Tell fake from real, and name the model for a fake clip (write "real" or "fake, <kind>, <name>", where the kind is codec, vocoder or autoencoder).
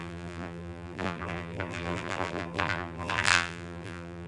fake, vocoder, BigVGAN v2